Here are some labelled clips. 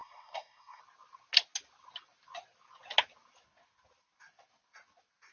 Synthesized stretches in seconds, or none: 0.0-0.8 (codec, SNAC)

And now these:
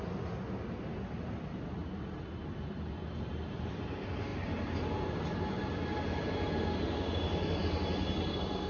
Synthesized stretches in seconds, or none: none